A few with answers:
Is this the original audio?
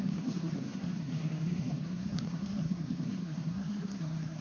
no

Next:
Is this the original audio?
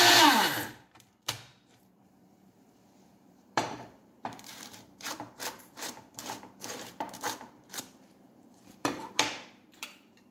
no